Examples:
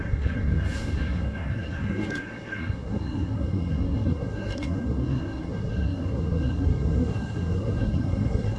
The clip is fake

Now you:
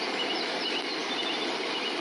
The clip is real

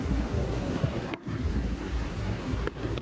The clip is fake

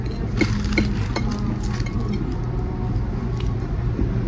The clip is real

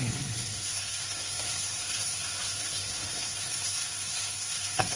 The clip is fake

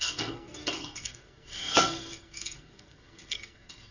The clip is fake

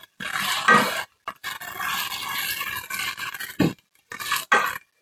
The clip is real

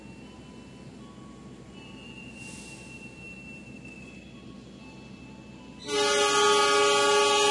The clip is real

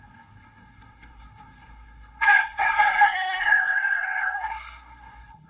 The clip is fake